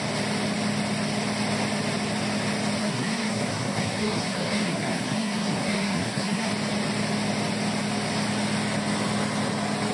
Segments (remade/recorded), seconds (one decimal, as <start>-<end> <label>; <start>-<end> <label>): 0.0-2.8 recorded; 2.8-6.5 remade; 6.5-9.9 recorded